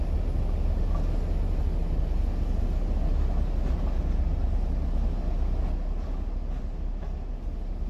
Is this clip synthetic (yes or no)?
no